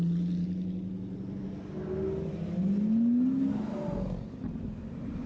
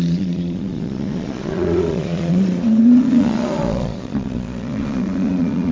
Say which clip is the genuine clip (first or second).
first